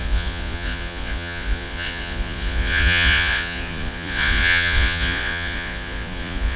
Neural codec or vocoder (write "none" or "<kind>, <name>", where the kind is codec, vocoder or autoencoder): vocoder, Vocos